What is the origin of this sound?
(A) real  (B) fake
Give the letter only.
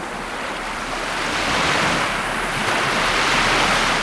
A